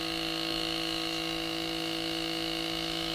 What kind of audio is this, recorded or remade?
remade